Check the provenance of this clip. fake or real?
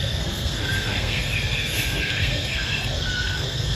fake